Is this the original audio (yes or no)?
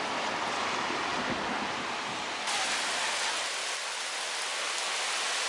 yes